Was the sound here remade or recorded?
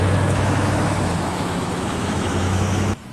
remade